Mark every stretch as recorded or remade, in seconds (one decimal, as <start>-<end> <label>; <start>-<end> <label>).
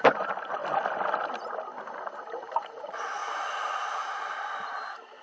0.0-0.6 remade; 0.6-2.2 recorded; 2.2-5.2 remade